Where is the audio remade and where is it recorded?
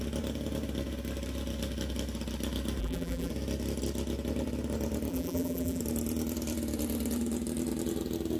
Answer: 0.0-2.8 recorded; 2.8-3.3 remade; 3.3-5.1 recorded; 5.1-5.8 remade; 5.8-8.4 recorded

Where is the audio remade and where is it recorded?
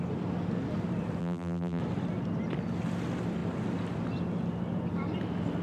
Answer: 0.0-1.2 recorded; 1.2-1.8 remade; 1.8-5.6 recorded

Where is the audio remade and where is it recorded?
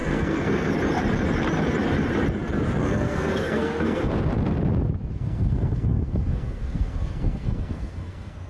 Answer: 0.0-0.7 remade; 0.7-2.8 recorded; 2.8-4.1 remade; 4.1-5.1 recorded; 5.1-8.5 remade